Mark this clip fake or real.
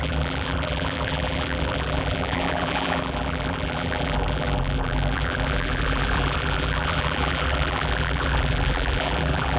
fake